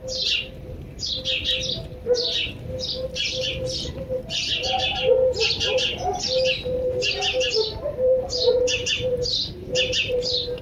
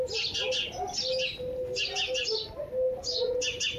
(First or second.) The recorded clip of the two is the second